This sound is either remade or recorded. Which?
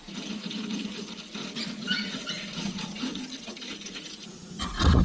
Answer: remade